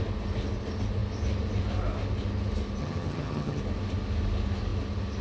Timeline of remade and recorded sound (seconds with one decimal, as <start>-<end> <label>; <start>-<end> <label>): 0.0-2.8 recorded; 2.8-3.6 remade; 3.6-5.2 recorded